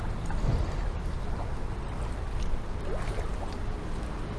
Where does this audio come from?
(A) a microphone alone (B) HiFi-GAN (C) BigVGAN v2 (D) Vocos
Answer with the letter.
A